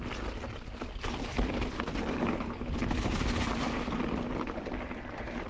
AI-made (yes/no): no